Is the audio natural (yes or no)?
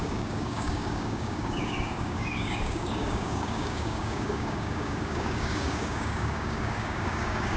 no